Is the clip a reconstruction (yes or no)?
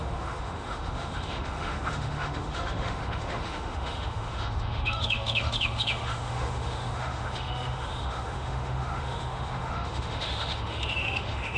yes